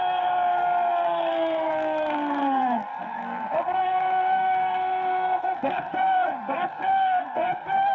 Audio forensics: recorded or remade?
remade